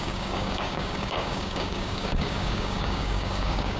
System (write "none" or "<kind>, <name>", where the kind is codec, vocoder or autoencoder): codec, DAC